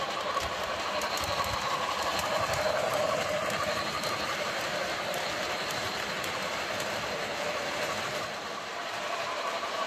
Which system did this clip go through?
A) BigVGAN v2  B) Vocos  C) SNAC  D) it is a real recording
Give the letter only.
A